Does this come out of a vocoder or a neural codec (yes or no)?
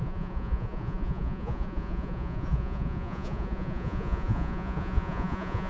yes